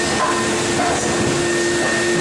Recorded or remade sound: recorded